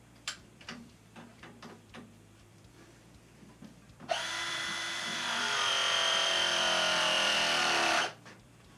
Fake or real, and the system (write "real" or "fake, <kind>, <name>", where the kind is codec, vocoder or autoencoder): fake, vocoder, BigVGAN v2